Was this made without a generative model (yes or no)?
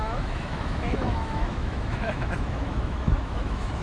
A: no